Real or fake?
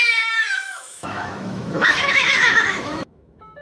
fake